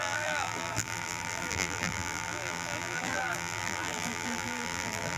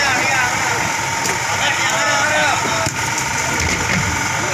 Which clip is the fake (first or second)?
first